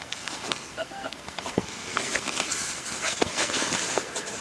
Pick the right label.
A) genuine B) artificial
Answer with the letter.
B